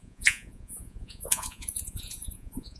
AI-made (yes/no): yes